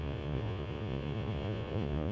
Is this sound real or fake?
fake